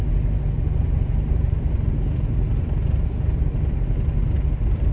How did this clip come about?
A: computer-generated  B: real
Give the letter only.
A